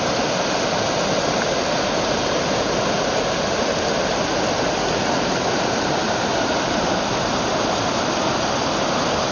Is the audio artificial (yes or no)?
no